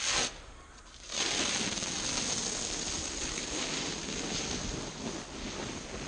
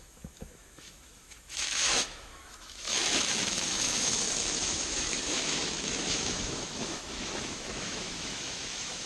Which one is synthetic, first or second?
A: second